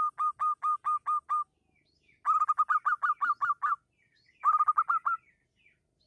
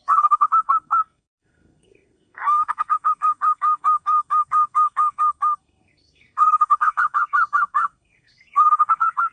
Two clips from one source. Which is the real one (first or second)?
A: first